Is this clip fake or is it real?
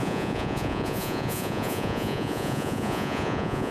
fake